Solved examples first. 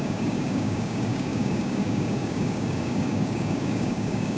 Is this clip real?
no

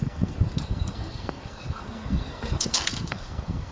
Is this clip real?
no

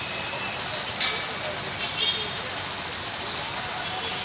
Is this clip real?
yes